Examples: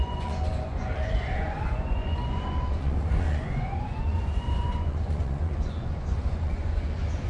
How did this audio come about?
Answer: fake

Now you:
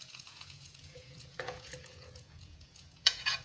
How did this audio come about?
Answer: fake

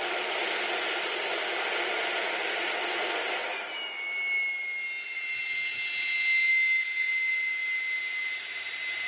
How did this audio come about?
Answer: real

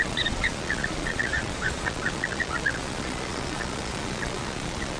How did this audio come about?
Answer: fake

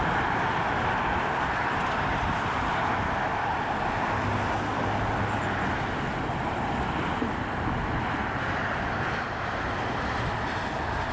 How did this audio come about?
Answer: real